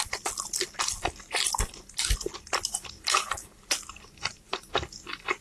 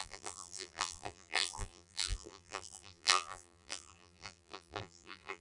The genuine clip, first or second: first